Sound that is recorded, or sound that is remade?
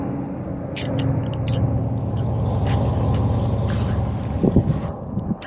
recorded